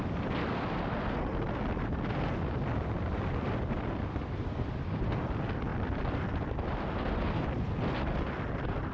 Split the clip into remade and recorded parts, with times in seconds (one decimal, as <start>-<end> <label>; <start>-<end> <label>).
0.0-8.9 recorded